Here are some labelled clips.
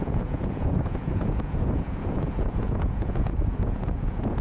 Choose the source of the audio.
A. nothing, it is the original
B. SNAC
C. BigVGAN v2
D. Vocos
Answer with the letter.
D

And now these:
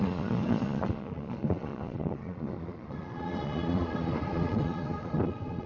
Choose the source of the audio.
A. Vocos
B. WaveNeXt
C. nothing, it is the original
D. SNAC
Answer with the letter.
A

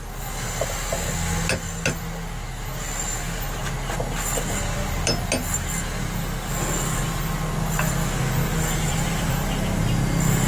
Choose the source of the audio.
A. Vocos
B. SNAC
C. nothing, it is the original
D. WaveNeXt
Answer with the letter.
C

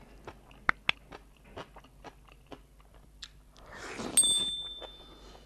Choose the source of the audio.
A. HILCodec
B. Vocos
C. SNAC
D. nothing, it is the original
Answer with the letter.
D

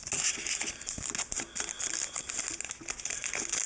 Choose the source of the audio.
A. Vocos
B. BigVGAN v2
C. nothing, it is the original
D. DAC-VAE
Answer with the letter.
C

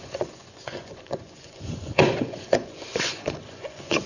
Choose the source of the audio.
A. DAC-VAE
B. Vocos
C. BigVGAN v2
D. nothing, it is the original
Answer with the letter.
B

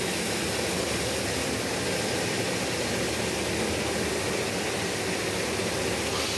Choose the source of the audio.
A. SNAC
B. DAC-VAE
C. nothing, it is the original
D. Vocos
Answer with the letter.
C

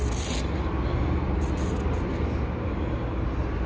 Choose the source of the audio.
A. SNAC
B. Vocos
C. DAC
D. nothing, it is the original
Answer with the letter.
D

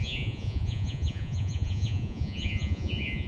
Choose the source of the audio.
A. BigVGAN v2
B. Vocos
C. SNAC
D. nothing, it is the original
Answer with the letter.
B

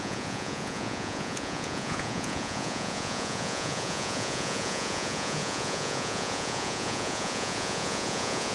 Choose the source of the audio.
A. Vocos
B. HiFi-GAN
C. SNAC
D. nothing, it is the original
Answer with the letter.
A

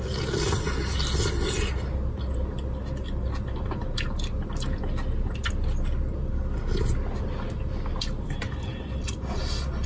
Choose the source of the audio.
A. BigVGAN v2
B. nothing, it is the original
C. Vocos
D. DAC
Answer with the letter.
B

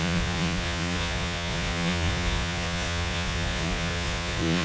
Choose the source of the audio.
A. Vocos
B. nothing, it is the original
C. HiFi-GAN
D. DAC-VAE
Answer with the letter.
A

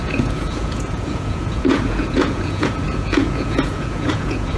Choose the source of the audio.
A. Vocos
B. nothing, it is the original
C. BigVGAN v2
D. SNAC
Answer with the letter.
A